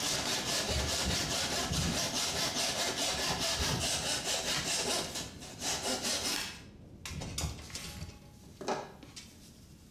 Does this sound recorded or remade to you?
recorded